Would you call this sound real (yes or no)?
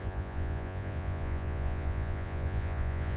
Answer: no